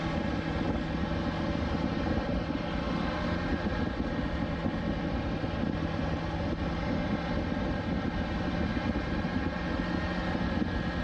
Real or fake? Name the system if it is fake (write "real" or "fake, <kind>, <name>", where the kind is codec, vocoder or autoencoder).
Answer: real